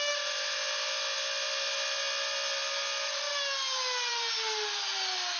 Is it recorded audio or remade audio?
recorded